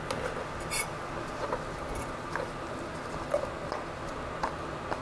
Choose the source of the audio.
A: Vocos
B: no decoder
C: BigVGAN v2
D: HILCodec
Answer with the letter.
B